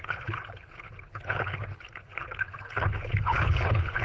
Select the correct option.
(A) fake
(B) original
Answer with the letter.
A